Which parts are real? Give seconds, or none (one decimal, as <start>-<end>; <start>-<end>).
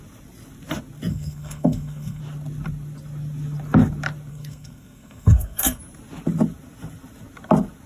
0.0-1.1; 2.2-4.3; 5.8-7.9